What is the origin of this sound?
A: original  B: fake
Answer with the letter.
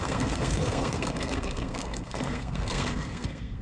B